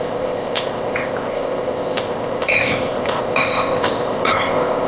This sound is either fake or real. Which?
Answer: fake